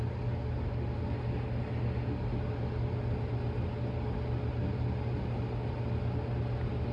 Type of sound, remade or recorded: recorded